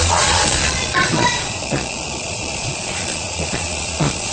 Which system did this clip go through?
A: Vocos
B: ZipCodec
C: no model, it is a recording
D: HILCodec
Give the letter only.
A